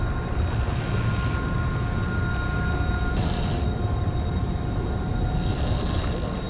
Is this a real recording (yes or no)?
yes